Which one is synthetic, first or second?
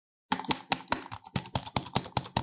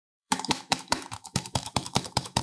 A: second